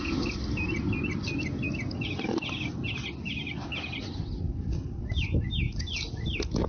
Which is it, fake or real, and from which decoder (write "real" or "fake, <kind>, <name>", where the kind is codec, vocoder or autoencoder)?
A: real